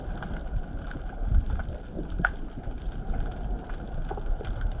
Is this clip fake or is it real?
real